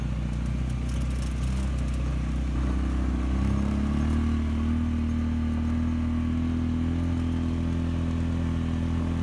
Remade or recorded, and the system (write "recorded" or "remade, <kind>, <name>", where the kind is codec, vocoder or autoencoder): recorded